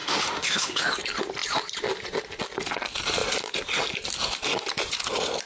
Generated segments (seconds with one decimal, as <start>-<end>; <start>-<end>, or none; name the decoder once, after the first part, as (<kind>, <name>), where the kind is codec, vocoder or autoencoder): 0.0-0.9 (autoencoder, DAC-VAE)